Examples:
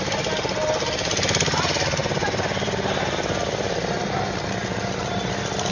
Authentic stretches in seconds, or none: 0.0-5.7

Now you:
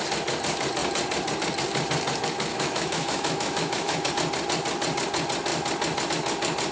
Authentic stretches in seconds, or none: 0.0-2.5; 4.1-6.7

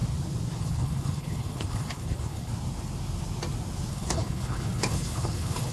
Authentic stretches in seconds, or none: 0.0-0.6; 2.5-3.9

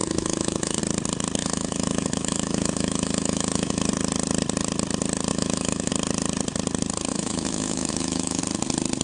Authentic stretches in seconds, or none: 0.8-1.4; 3.9-5.3; 5.9-7.1; 8.4-9.0

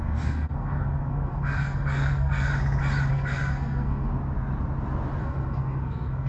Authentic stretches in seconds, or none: 2.5-3.1; 4.1-5.2

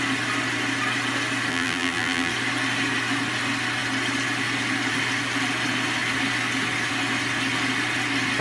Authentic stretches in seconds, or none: 0.0-1.5; 2.3-8.4

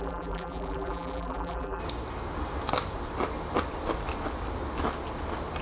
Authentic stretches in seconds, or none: 1.8-5.6

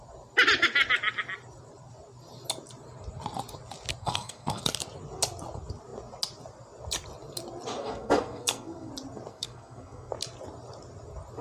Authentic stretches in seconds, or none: 0.0-4.0; 4.6-7.8; 8.9-9.3; 10.1-11.4